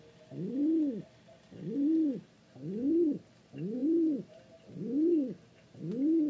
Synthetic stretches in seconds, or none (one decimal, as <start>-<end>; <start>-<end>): none